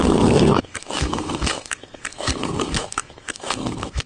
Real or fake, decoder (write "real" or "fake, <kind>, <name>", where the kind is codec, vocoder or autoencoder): fake, codec, SNAC